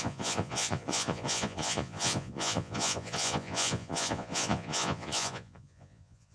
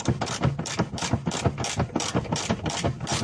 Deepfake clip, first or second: first